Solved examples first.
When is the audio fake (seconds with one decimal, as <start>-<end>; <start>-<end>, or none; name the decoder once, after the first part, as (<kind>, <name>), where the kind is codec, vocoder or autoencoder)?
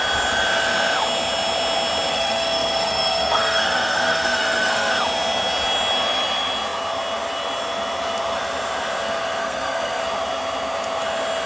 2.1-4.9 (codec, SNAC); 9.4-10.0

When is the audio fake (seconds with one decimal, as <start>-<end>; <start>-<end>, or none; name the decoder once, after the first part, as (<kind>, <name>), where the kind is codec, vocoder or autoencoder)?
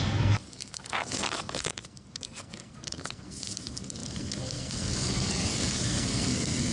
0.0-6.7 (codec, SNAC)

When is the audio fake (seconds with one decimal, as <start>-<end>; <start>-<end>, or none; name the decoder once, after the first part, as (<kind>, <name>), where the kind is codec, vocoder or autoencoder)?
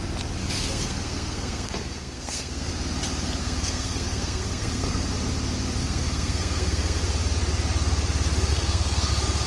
0.4-2.7 (codec, SNAC); 3.4-5.1; 5.8-7.0; 8.5-9.1